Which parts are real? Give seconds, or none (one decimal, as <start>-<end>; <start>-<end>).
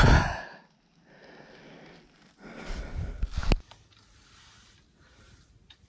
0.0-5.9